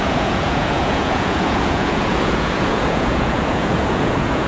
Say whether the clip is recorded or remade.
remade